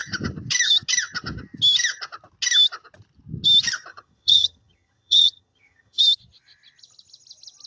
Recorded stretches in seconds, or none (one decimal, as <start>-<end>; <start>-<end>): 0.0-3.9; 6.0-7.7